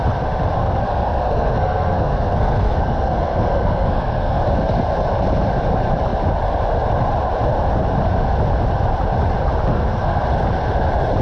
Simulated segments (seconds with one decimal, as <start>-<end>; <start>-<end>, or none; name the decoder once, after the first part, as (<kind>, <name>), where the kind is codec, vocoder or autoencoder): 0.6-4.4 (codec, SNAC); 9.7-10.2